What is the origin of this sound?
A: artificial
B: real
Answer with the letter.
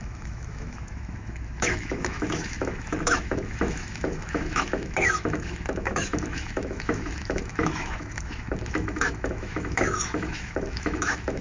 A